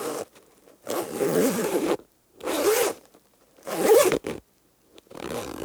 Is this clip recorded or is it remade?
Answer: remade